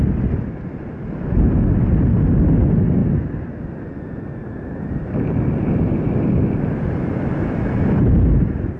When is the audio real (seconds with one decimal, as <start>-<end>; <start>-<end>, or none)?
0.0-8.8